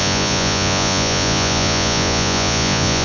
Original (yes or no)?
no